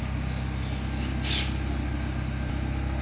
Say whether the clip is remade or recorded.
recorded